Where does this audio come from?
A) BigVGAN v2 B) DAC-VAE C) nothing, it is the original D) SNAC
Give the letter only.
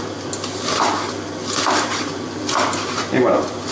A